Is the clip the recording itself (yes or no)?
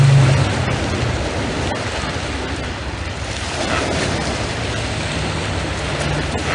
yes